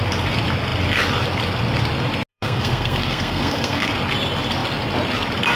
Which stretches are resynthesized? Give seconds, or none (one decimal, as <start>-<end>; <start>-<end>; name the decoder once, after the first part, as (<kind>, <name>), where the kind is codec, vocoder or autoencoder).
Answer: 2.3-3.9 (codec, SNAC)